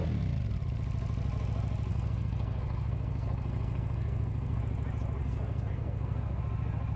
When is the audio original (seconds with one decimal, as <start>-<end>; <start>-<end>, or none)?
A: 0.0-1.9; 4.6-5.2; 6.4-7.0